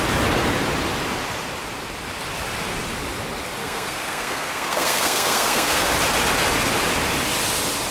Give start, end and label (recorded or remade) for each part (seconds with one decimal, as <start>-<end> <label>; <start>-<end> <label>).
0.0-3.6 recorded; 3.6-5.9 remade; 5.9-7.9 recorded